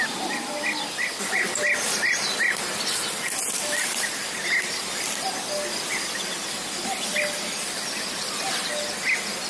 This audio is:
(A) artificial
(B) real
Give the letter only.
B